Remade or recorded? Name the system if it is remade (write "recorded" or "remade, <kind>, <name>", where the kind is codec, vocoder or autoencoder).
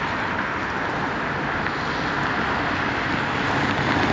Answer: recorded